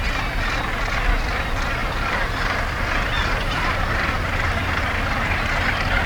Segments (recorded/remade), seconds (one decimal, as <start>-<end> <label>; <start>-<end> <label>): 0.0-6.1 recorded